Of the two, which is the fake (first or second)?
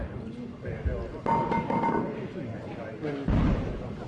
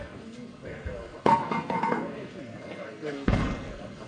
second